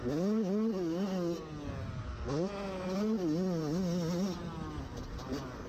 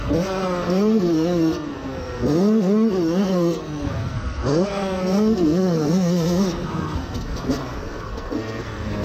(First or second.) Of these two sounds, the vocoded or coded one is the second